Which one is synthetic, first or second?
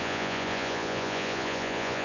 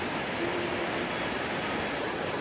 first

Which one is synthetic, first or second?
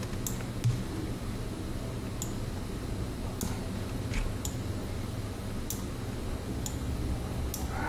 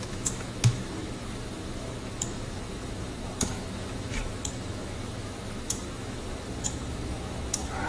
second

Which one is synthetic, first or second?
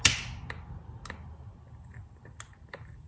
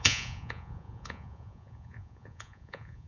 second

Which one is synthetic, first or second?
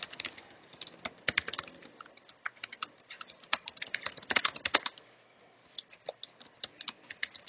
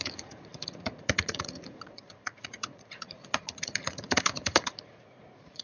second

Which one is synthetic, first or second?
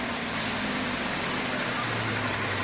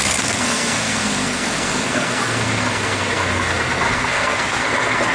second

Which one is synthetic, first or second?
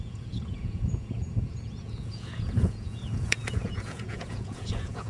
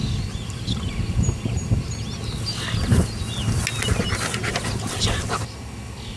first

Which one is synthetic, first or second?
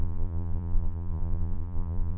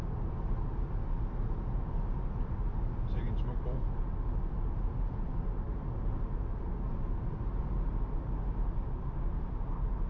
first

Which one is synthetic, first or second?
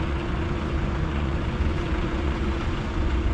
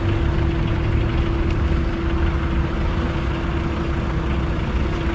first